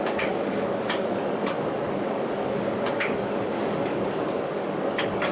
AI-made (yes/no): yes